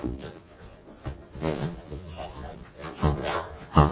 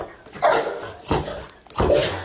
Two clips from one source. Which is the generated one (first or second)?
first